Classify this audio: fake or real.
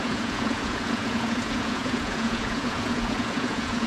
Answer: fake